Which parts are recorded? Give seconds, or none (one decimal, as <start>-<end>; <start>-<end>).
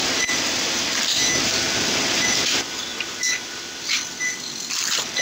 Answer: 0.0-5.2